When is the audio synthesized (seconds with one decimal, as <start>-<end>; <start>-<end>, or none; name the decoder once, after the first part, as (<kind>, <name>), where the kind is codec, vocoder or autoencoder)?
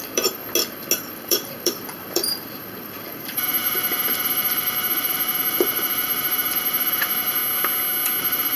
0.0-0.4 (vocoder, BigVGAN v2); 1.2-7.4; 8.2-8.6